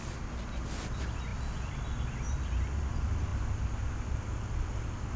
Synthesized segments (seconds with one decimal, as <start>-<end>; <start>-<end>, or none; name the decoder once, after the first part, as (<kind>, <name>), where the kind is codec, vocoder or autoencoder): none